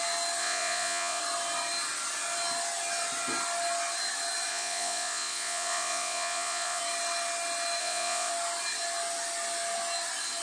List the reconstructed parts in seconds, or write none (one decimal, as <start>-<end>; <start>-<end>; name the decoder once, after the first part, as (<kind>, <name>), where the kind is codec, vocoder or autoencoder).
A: 0.4-1.2 (vocoder, Vocos); 4.5-6.8; 7.8-8.3